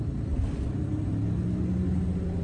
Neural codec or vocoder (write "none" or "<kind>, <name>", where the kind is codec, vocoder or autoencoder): none